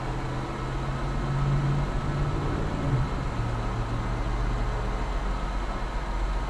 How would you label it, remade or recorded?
recorded